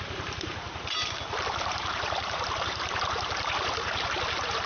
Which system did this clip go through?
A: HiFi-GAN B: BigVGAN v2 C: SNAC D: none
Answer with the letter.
B